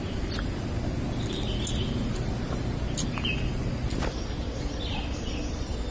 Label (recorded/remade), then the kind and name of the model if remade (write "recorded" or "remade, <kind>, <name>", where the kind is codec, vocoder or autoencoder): recorded